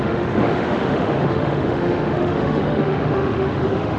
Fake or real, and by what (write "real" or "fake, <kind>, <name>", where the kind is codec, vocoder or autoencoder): fake, autoencoder, DAC-VAE